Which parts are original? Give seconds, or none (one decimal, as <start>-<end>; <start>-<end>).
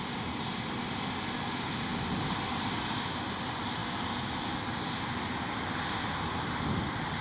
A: 0.0-7.2